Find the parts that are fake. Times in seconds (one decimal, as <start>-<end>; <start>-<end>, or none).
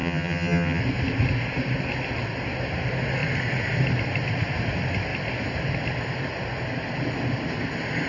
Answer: 0.0-0.8